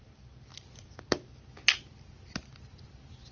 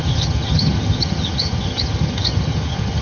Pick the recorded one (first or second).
first